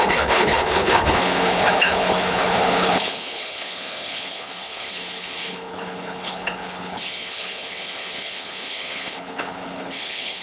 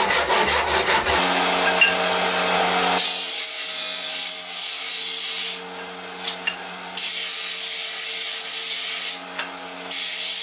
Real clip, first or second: second